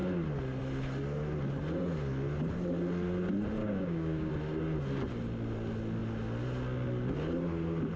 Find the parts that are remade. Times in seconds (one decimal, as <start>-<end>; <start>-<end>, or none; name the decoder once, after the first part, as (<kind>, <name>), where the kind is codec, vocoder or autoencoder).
3.6-4.3 (codec, DAC)